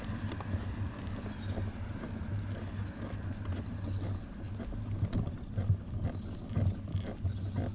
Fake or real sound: real